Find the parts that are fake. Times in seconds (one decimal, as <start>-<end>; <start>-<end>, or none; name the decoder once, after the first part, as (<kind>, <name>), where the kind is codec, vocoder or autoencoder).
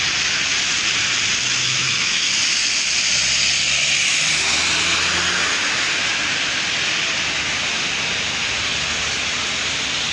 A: 1.6-2.3 (autoencoder, DAC-VAE)